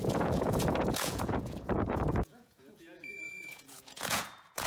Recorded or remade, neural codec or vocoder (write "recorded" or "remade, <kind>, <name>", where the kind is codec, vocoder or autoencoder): remade, vocoder, Vocos